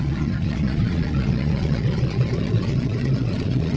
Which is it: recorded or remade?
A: remade